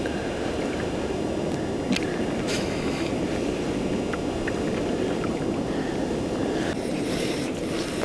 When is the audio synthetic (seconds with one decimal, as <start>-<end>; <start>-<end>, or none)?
2.5-3.1